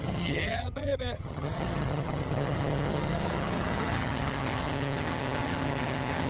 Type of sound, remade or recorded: remade